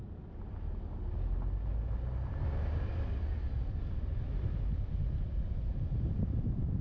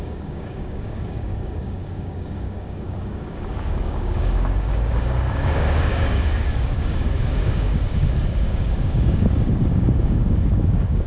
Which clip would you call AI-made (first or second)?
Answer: second